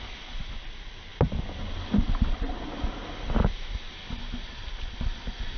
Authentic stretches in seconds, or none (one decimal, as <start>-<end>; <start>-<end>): 0.0-5.6